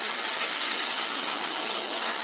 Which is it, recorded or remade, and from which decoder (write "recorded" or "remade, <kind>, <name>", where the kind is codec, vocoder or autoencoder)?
remade, vocoder, HiFi-GAN